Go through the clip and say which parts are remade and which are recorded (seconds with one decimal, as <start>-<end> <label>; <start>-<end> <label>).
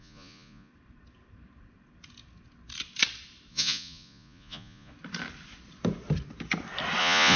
0.0-0.7 remade; 0.7-3.5 recorded; 3.5-4.9 remade; 4.9-7.0 recorded; 7.0-7.4 remade